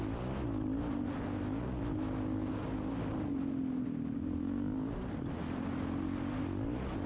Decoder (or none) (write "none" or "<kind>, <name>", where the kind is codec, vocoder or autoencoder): none